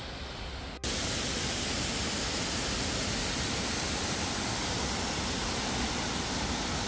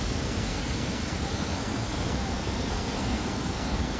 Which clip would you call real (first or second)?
first